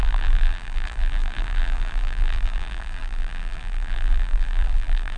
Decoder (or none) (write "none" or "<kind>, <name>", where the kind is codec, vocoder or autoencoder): vocoder, BigVGAN v2